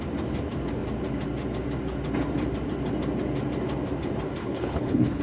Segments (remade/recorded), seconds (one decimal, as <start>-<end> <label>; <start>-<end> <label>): 0.0-4.4 recorded; 4.4-5.2 remade